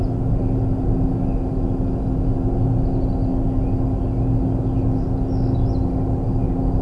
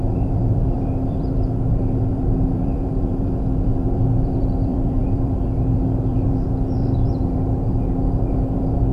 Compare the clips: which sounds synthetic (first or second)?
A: second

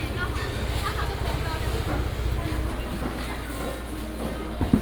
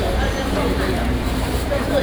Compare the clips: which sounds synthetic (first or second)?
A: second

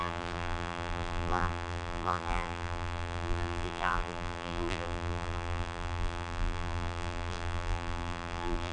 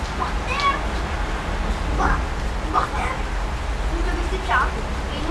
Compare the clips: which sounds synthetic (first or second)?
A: first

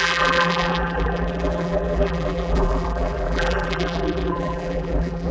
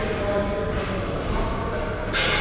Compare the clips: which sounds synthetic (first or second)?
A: first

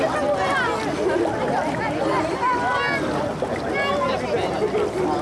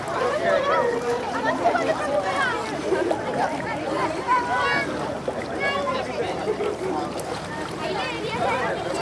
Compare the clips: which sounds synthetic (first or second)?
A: second